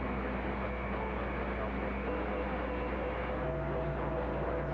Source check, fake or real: real